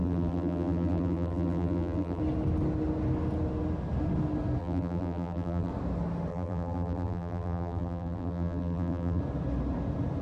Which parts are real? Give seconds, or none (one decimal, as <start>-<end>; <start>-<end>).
2.2-4.6; 5.7-6.3; 9.2-10.2